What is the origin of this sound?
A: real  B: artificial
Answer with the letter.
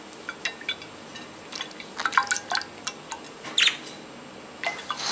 A